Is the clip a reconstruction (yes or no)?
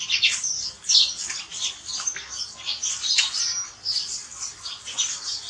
no